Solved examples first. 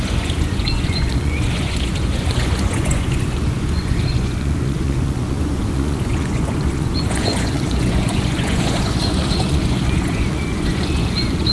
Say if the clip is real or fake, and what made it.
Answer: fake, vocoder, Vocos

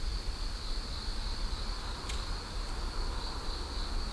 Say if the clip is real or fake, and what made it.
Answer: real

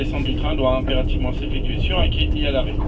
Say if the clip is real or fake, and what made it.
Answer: real